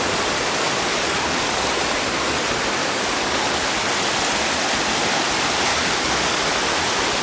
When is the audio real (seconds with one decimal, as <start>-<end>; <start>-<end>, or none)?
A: 0.0-0.9; 1.7-2.8; 3.4-5.7; 6.4-7.2